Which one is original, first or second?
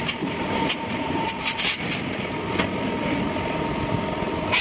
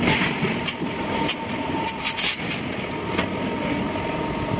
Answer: second